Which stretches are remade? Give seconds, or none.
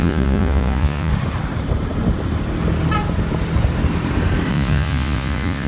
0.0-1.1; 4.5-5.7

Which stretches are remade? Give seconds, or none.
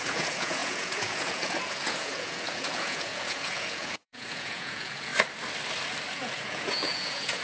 0.0-5.1; 6.1-7.4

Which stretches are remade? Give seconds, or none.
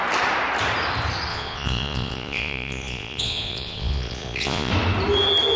1.3-4.7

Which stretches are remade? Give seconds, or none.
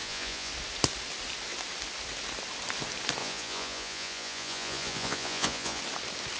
0.0-0.5; 3.2-5.8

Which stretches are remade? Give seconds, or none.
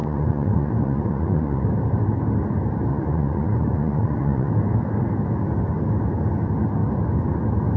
0.0-1.7; 2.9-4.5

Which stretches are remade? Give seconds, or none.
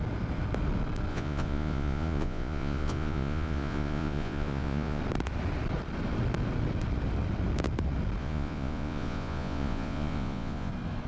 1.1-5.0; 8.2-10.7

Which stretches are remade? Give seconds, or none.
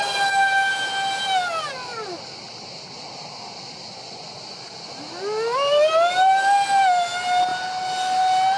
3.9-4.9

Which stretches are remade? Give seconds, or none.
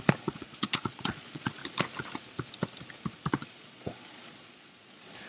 0.0-1.6; 3.3-5.3